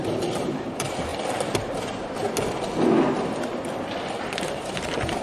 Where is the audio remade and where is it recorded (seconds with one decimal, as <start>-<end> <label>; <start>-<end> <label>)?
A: 0.0-1.1 remade; 1.1-4.2 recorded; 4.2-5.2 remade

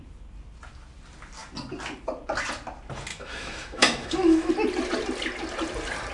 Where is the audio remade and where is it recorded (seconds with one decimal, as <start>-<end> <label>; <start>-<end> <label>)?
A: 0.0-3.1 recorded; 3.1-4.5 remade; 4.5-6.1 recorded

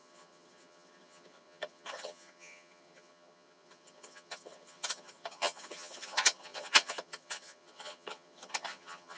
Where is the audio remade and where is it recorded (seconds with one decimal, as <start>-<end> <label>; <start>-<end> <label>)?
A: 0.0-9.2 remade

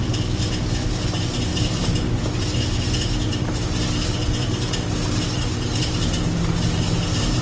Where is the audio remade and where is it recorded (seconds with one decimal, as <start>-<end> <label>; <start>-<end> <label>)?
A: 0.0-1.5 recorded; 1.5-2.3 remade; 2.3-7.4 recorded

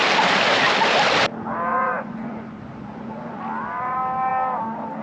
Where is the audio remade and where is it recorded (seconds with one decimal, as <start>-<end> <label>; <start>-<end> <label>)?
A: 0.0-1.7 recorded; 1.7-3.4 remade; 3.4-5.0 recorded

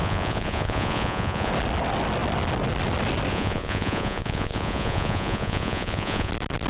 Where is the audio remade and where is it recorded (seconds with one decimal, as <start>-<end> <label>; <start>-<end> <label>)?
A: 0.0-1.5 remade; 1.5-3.3 recorded; 3.3-6.3 remade; 6.3-6.7 recorded